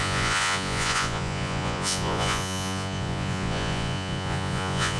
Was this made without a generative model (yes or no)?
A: no